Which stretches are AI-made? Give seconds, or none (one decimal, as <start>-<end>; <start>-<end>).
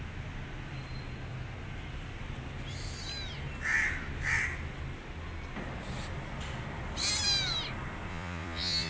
8.1-8.9